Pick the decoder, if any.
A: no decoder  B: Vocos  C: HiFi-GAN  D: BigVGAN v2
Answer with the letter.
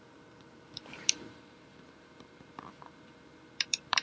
D